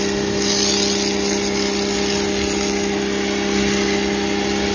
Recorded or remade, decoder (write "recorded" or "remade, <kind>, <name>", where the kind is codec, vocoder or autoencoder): recorded